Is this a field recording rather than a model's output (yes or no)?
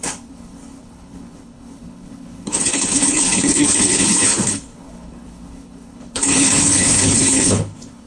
no